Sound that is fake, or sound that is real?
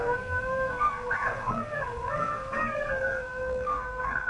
fake